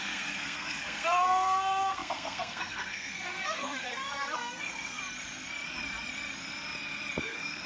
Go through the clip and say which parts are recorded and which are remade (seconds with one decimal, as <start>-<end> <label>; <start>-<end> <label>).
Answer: 0.0-5.0 remade; 5.0-7.2 recorded; 7.2-7.7 remade